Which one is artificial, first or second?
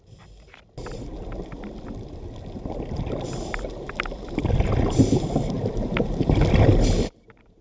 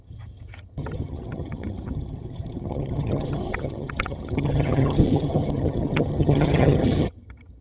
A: second